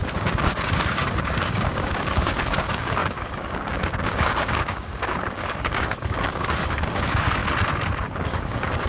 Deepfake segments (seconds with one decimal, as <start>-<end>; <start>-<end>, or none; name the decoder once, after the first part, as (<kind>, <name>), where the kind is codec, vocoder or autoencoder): 0.0-7.4 (codec, DAC); 7.9-8.9